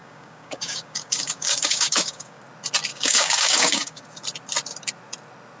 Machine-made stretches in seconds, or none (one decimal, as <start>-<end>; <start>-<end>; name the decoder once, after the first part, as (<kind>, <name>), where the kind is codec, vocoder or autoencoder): 0.0-2.4 (codec, DAC); 2.9-4.0